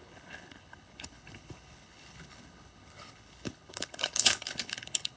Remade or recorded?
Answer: remade